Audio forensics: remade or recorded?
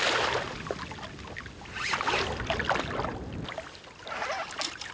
recorded